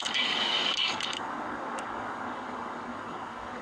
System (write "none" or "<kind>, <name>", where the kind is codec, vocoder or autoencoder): codec, DAC